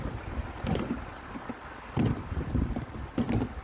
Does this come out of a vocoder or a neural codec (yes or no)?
no